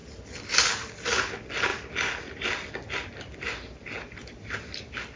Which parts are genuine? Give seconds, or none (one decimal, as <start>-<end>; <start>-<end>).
0.0-5.2